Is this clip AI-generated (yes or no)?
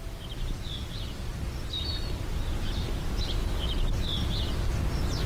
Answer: no